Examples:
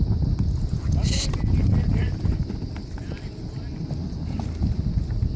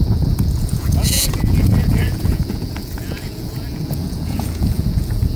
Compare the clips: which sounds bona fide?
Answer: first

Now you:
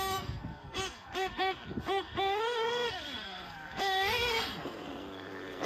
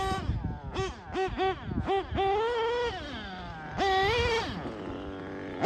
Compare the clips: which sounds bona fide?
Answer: second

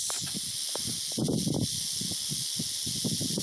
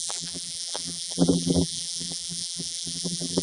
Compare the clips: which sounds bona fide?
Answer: first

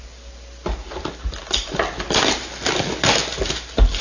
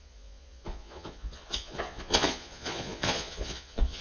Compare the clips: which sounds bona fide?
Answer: first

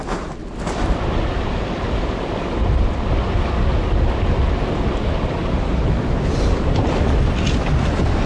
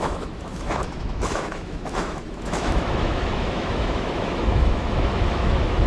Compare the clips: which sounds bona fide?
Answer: first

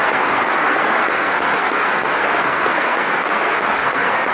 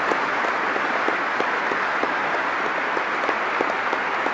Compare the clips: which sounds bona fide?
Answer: second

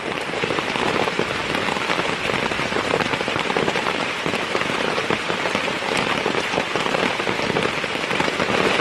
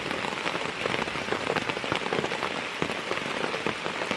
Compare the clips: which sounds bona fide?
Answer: second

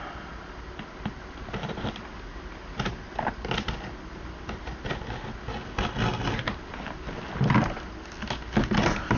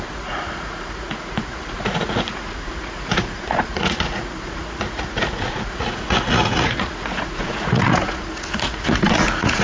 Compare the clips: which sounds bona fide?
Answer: first